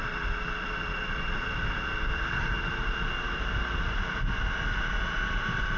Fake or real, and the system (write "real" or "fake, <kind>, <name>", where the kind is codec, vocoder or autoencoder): fake, vocoder, BigVGAN v2